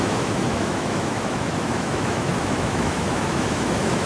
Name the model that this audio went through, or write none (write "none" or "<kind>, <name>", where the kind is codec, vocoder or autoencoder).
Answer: autoencoder, DAC-VAE